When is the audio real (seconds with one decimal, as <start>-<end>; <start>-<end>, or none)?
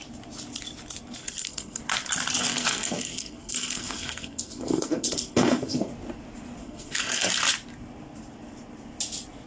0.0-1.2; 1.8-2.5; 5.9-6.6; 7.3-9.5